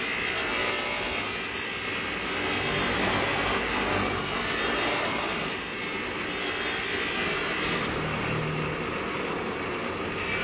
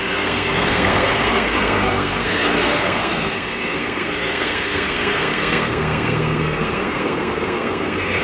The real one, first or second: first